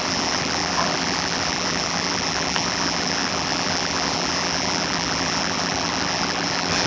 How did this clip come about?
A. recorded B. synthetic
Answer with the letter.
B